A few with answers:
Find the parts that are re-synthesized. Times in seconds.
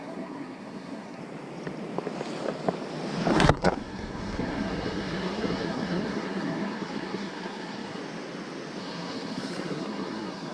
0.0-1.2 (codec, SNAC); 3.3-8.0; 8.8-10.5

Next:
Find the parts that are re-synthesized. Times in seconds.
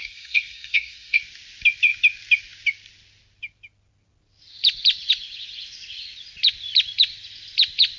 0.0-1.2 (codec, SNAC)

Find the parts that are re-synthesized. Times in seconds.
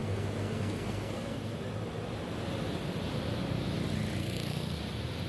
0.0-1.5 (codec, SNAC); 4.2-4.8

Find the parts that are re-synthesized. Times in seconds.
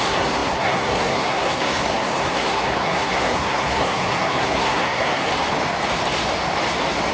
0.0-5.3 (codec, SNAC)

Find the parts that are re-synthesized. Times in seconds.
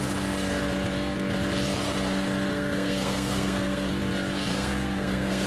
2.5-3.9 (codec, SNAC); 4.5-5.5